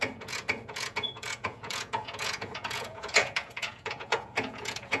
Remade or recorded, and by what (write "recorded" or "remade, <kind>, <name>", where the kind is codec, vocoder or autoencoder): remade, vocoder, Vocos